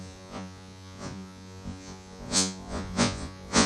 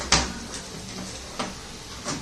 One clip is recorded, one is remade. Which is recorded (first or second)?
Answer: second